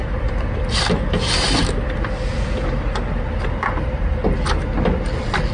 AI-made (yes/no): no